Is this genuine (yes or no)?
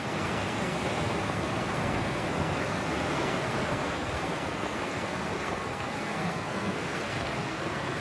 no